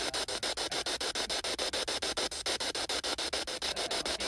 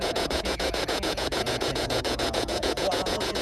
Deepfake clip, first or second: second